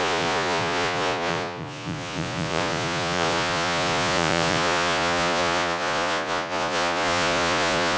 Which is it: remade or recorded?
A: remade